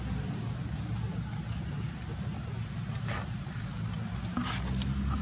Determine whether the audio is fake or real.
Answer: real